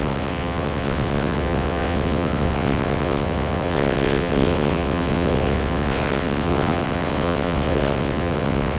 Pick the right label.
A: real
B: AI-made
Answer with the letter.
B